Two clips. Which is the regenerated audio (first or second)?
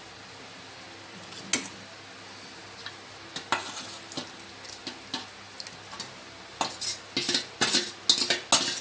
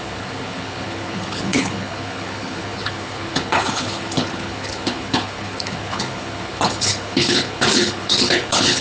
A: second